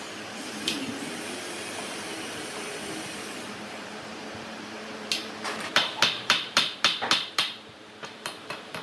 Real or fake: fake